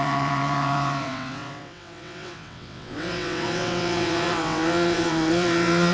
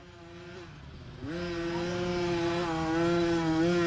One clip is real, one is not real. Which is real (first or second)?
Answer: second